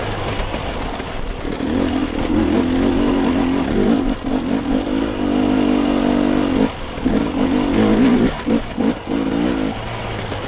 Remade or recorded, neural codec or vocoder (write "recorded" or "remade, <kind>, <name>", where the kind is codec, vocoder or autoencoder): recorded